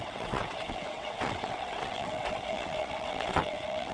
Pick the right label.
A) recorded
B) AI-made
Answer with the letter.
B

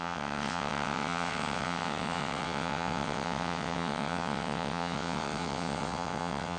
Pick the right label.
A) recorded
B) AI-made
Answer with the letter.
B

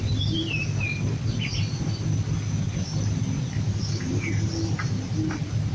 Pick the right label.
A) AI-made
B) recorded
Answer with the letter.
B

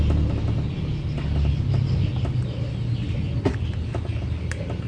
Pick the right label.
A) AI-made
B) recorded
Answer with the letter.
B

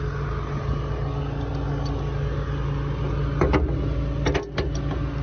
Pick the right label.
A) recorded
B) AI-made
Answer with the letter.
A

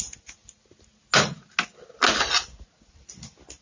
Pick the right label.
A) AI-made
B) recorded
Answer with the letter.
B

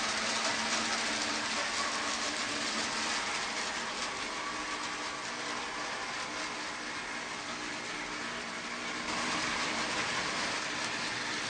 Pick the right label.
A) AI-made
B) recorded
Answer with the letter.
B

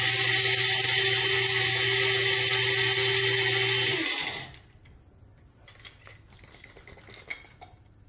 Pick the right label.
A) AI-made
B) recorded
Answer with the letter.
B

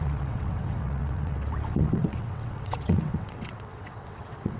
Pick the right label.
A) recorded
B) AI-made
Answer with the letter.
B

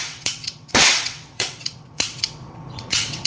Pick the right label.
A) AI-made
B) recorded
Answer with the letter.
A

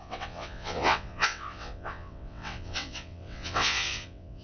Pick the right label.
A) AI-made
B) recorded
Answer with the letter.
A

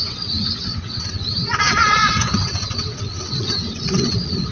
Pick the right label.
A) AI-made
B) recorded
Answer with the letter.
A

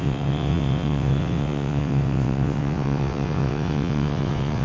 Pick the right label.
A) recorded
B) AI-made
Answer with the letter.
B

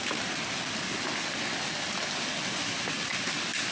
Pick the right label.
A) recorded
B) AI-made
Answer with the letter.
A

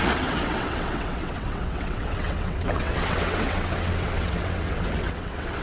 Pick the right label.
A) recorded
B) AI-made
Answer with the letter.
B